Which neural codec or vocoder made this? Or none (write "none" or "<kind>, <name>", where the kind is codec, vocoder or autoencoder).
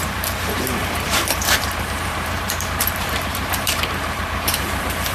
vocoder, BigVGAN v2